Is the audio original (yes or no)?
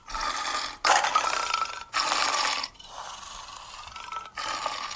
yes